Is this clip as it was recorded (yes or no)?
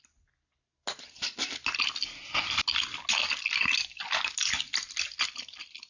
yes